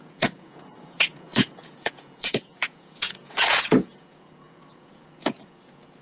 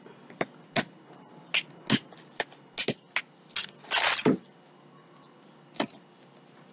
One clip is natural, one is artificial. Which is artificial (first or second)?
first